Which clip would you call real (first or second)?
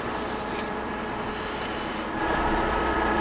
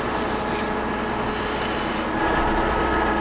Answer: second